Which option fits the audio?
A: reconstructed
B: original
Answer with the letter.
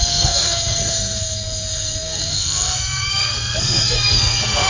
A